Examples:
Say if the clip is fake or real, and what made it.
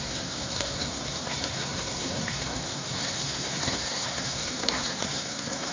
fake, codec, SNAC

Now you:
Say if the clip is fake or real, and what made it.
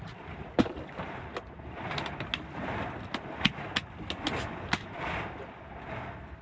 real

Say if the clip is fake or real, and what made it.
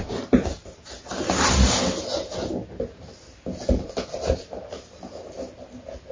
real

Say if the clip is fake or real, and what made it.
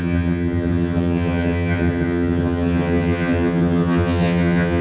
fake, vocoder, HiFi-GAN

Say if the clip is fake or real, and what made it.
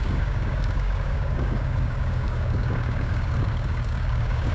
fake, codec, DAC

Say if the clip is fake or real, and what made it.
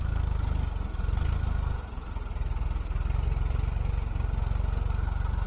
real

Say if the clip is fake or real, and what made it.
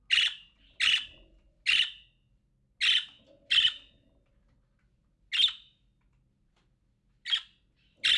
real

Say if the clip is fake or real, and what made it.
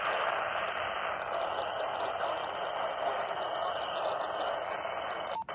real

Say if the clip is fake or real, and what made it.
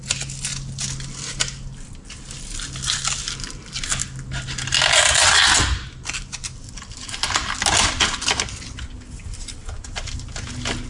real